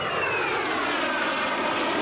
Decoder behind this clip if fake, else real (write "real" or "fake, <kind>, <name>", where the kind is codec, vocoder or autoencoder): real